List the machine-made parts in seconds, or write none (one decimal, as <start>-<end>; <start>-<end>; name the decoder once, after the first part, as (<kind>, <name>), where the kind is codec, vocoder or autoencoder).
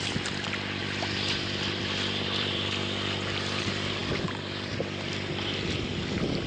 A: 0.8-3.6 (vocoder, BigVGAN v2)